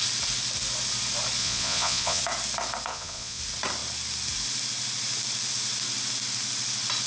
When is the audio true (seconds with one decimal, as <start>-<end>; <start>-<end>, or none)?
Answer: 0.0-1.4; 2.2-2.9; 3.4-7.1